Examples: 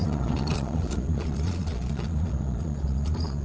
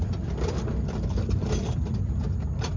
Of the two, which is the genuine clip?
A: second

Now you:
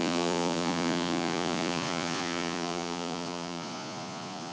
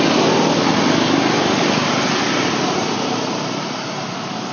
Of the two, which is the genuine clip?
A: second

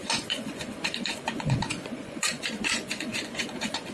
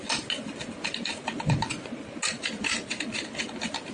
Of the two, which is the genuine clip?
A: second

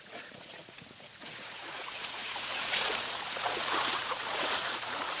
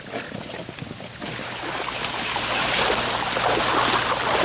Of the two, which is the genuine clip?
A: second